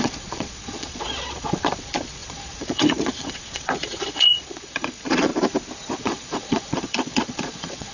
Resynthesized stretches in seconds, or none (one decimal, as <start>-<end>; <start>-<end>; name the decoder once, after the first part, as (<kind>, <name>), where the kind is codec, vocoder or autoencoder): 0.0-5.3 (vocoder, Vocos); 6.0-7.9